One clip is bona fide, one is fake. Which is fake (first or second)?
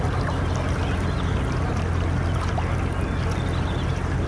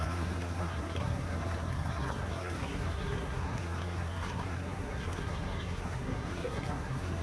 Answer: second